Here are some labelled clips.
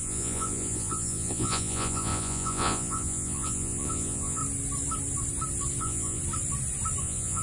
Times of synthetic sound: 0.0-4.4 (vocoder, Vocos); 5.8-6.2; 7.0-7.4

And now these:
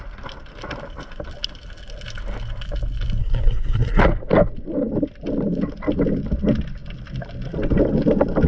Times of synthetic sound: 3.2-4.0 (codec, SNAC)

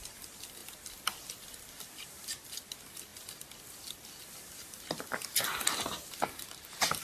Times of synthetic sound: 0.0-0.6 (vocoder, BigVGAN v2); 1.6-7.0

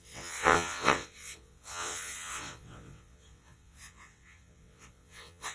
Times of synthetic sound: 0.0-5.5 (vocoder, WaveNeXt)

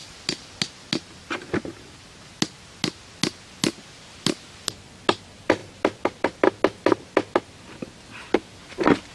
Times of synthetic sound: none

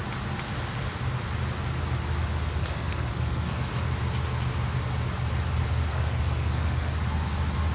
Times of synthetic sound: 2.6-3.9 (codec, SNAC); 5.9-6.9